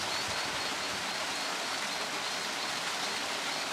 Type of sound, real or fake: real